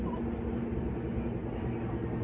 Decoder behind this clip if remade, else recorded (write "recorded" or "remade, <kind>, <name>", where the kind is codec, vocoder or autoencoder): recorded